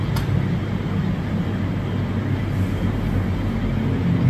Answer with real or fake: real